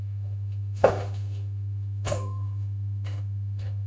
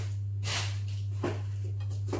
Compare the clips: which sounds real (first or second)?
second